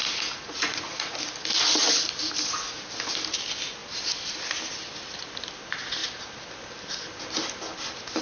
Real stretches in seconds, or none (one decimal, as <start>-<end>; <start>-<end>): 1.2-8.2